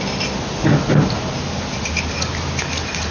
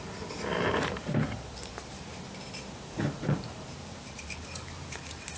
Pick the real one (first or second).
first